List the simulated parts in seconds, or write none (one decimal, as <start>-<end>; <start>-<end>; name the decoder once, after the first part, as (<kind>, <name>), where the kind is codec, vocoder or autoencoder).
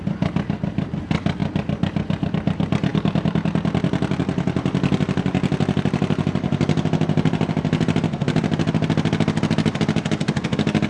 none